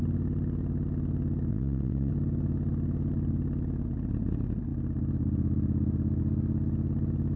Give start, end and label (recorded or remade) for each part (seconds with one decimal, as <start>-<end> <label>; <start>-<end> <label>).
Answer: 0.0-1.5 recorded; 1.5-2.1 remade; 2.1-7.4 recorded